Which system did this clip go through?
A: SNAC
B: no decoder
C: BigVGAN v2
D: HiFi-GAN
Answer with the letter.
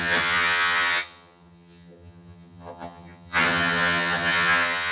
D